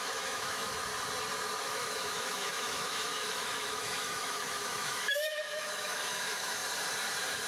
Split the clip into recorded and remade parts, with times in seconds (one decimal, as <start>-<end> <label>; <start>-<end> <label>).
0.0-0.9 remade; 0.9-1.6 recorded; 1.6-6.6 remade; 6.6-7.5 recorded